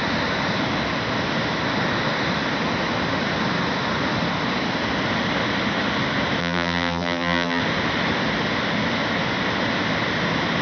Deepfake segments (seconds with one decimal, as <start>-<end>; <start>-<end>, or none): 6.4-7.6

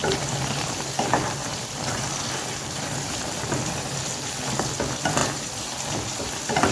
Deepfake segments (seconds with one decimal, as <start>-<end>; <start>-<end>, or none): 0.0-4.0

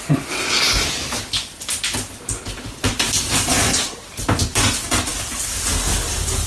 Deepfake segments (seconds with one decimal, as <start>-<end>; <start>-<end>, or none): none